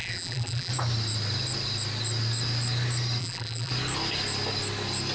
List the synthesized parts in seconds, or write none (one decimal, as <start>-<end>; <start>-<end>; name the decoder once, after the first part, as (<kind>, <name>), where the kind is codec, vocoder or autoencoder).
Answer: 0.0-0.7 (vocoder, BigVGAN v2); 3.2-3.7